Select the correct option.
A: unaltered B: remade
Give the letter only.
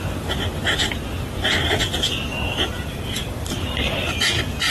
A